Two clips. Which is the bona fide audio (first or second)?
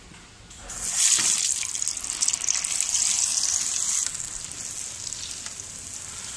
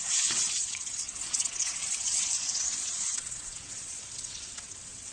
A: first